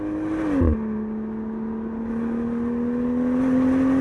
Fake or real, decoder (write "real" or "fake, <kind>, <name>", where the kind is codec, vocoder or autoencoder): real